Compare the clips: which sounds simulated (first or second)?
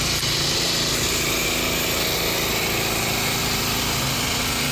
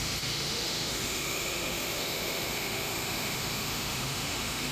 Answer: second